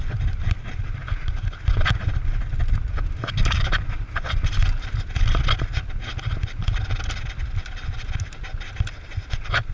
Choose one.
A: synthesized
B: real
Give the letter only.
B